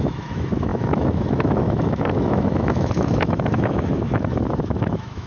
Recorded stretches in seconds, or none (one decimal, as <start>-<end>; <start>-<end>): none